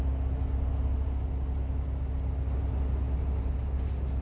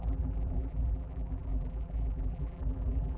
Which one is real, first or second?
first